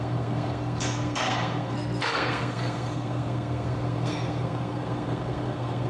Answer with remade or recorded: remade